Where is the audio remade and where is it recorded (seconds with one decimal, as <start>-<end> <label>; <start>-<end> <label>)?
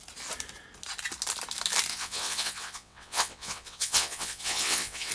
0.0-1.9 recorded; 1.9-5.1 remade